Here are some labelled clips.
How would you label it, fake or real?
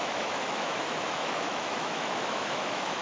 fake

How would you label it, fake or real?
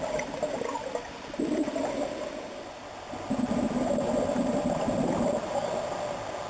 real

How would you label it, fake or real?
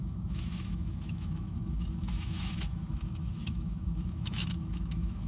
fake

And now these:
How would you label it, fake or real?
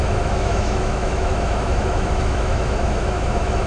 fake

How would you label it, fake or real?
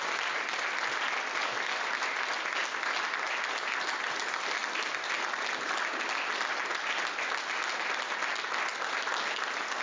real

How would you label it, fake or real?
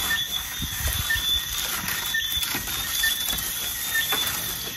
real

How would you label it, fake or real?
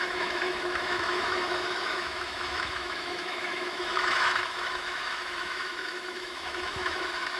fake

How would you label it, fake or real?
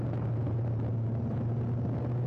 real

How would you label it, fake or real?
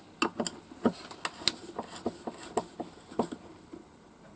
real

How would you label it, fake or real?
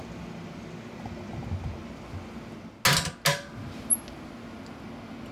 real